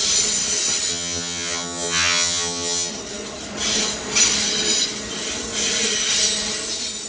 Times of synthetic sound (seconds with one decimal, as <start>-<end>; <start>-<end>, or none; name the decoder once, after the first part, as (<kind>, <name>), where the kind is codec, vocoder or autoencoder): 0.9-2.9 (vocoder, HiFi-GAN)